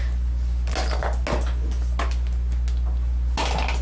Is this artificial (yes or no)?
no